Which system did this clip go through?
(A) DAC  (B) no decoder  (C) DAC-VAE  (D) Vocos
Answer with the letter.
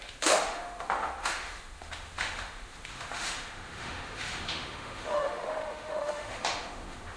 C